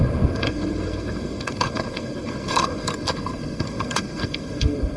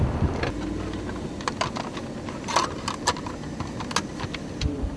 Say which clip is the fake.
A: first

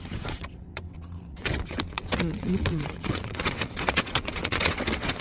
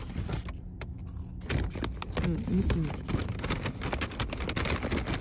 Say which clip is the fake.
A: first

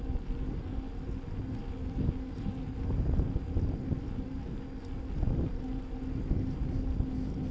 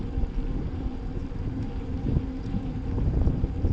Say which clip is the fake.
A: second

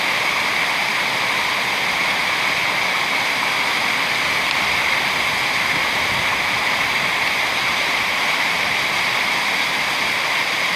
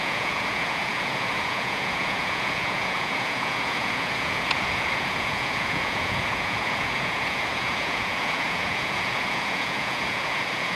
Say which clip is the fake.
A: second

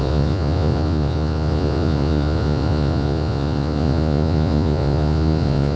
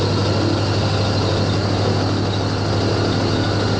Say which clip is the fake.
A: first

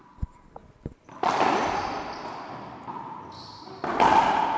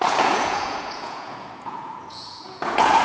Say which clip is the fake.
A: second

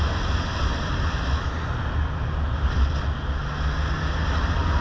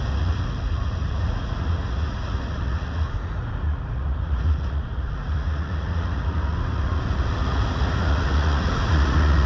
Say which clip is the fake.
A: second